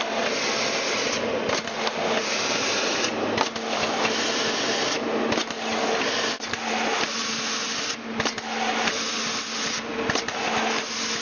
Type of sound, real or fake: real